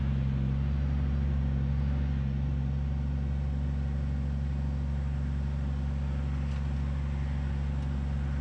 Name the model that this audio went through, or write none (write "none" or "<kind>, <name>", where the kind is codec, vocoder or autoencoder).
none